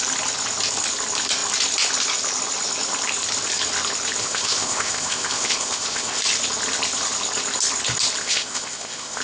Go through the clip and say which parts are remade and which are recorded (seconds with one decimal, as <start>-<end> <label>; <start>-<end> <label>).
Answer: 0.0-4.2 recorded; 4.2-6.2 remade; 6.2-8.2 recorded; 8.2-9.2 remade